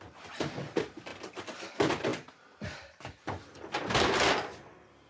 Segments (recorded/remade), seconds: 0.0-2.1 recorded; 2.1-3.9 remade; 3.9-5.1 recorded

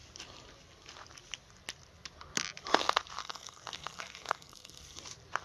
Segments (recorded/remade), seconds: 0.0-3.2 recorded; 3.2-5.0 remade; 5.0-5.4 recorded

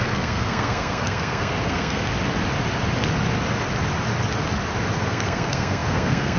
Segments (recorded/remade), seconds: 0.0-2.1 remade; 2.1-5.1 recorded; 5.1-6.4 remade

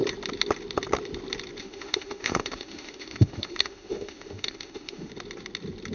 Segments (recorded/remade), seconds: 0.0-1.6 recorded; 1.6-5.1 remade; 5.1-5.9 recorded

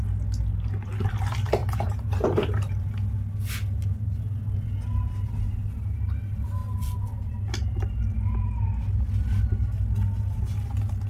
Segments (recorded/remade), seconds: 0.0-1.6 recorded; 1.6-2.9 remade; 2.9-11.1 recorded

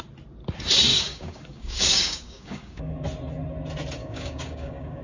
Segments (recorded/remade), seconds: 0.0-0.9 recorded; 0.9-2.9 remade; 2.9-4.0 recorded; 4.0-5.0 remade

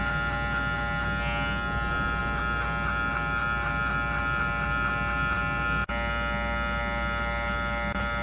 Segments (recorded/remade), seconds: 0.0-8.2 recorded